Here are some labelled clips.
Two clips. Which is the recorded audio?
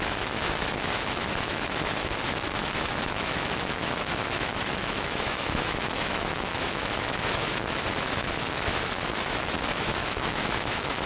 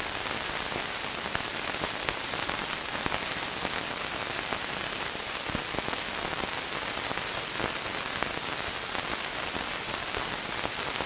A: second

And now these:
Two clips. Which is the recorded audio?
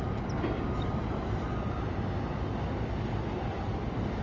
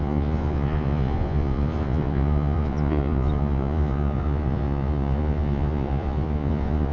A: first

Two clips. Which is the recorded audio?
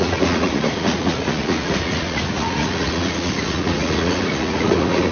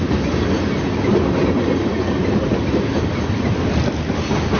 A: second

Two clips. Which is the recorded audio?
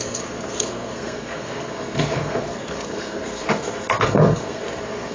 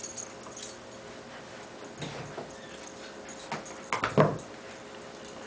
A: second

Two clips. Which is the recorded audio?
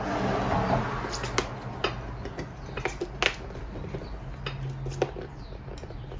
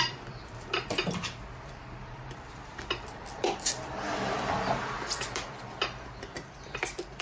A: first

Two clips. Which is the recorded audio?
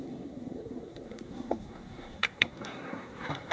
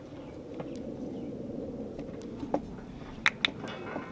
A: second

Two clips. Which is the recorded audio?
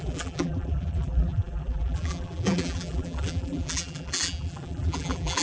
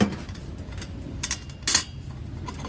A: second